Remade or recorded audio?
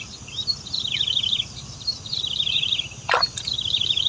recorded